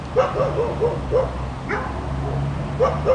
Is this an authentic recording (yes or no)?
yes